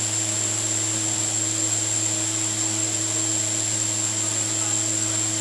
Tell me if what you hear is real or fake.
real